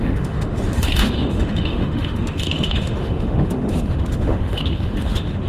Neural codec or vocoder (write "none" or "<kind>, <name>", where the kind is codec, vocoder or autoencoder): autoencoder, DAC-VAE